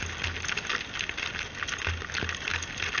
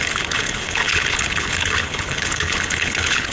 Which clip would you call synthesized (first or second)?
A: second